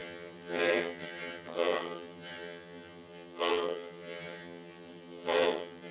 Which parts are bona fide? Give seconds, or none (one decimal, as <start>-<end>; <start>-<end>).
none